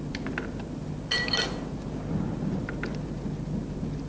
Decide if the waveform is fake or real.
real